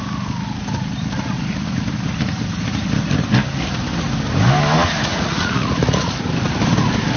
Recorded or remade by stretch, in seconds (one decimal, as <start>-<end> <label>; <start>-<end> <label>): 0.0-5.1 recorded; 5.1-6.1 remade; 6.1-7.2 recorded